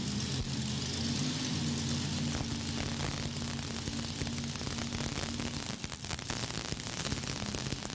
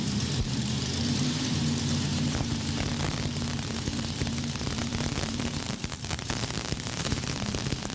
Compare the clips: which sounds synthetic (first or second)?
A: second